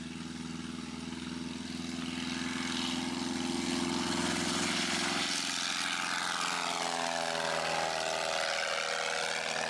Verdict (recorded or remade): recorded